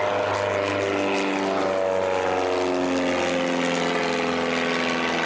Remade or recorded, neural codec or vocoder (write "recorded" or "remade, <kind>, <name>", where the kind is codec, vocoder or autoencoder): recorded